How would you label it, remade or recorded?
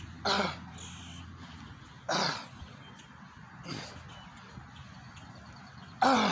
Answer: recorded